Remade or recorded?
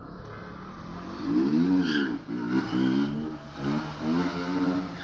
recorded